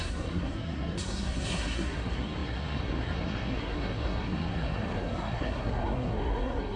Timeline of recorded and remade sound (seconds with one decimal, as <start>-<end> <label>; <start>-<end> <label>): 0.0-6.8 remade